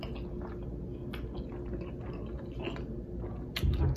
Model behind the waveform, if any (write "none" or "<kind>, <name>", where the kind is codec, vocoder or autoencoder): none